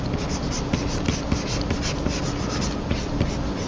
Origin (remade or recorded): recorded